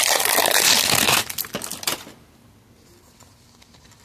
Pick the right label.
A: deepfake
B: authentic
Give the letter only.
B